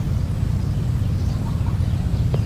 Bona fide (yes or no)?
yes